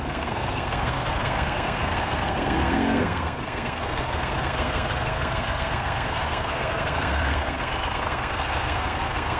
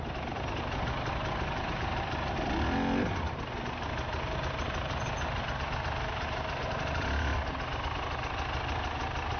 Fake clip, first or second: first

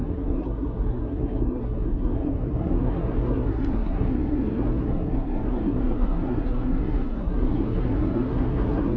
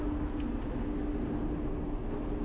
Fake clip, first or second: first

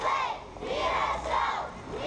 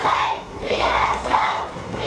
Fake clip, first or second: second